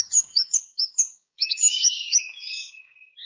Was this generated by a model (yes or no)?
yes